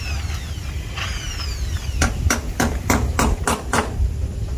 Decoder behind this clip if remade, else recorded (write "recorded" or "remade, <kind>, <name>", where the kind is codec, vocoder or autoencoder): recorded